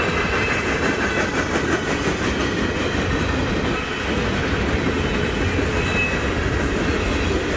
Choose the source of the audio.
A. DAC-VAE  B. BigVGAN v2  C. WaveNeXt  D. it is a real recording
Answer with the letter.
D